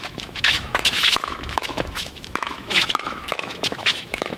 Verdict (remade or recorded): remade